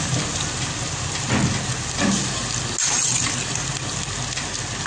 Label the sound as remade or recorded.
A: recorded